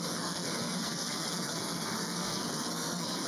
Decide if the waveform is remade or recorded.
remade